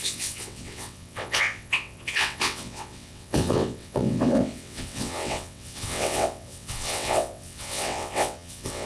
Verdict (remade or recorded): remade